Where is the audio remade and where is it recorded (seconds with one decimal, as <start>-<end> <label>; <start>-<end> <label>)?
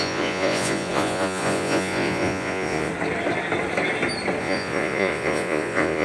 0.0-2.9 remade; 2.9-4.4 recorded; 4.4-6.0 remade